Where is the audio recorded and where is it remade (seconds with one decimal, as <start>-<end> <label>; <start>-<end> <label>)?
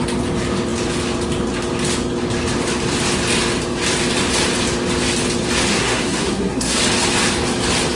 0.0-5.7 recorded; 5.7-6.8 remade; 6.8-8.0 recorded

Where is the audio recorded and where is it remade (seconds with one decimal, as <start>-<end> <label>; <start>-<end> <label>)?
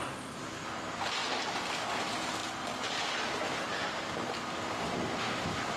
0.0-5.8 recorded